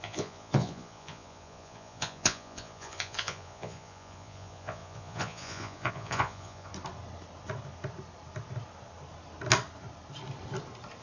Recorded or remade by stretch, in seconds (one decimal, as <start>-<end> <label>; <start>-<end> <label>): 0.0-6.7 remade; 6.7-11.0 recorded